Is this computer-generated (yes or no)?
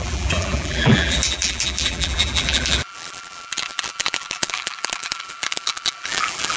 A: yes